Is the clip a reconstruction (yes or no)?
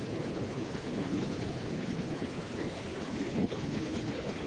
yes